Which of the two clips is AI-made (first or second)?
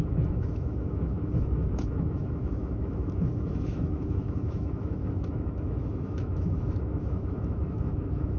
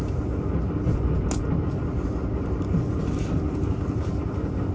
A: first